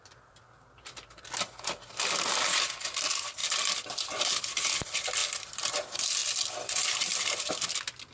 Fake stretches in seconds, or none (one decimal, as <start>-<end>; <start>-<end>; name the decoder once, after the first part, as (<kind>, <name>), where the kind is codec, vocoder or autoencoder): none